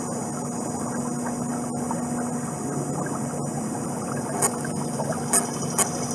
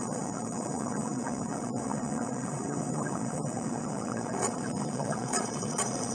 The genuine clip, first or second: first